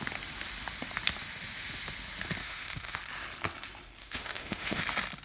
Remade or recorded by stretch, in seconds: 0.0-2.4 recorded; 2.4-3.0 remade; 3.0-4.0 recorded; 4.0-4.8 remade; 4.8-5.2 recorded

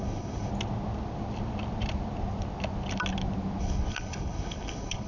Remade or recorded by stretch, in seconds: 0.0-0.5 remade; 0.5-3.6 recorded; 3.6-5.1 remade

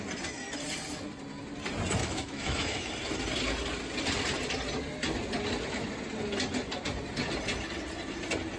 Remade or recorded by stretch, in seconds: 0.0-2.0 recorded; 2.0-2.9 remade; 2.9-8.6 recorded

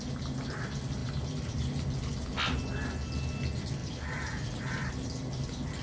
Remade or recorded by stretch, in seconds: 0.0-1.0 recorded; 1.0-1.7 remade; 1.7-3.8 recorded; 3.8-4.9 remade; 4.9-5.8 recorded